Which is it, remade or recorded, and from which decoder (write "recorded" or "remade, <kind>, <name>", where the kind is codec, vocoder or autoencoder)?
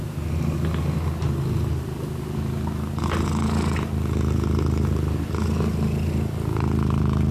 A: recorded